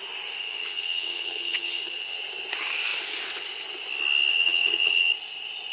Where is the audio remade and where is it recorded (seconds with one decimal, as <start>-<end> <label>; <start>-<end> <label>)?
0.0-0.4 recorded; 0.4-2.2 remade; 2.2-4.3 recorded; 4.3-5.1 remade; 5.1-5.7 recorded